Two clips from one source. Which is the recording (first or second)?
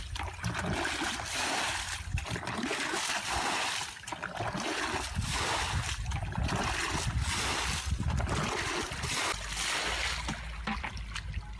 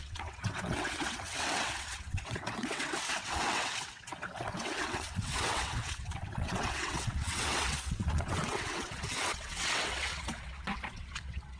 first